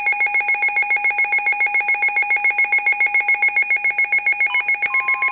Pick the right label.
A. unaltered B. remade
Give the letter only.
A